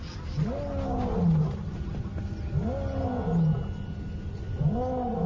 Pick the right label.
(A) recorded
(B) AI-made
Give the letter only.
A